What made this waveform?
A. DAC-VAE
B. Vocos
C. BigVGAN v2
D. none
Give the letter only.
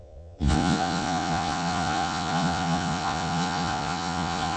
B